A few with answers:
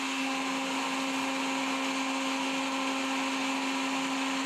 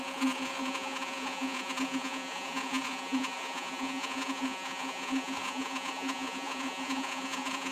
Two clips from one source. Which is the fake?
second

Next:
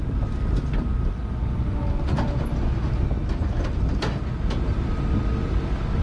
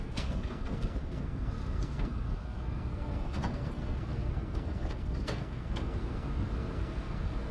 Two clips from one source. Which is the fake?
second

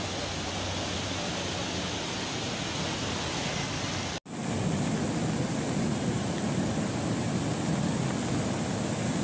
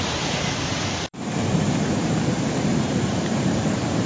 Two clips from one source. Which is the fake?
second